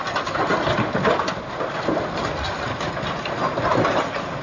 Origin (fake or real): real